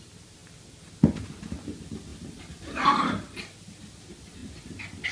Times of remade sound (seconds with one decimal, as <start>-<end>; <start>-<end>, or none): none